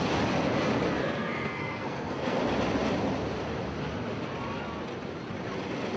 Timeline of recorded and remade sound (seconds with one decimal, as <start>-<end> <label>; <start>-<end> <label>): 0.0-1.0 recorded; 1.0-2.4 remade; 2.4-6.0 recorded